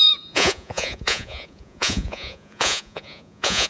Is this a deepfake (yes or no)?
yes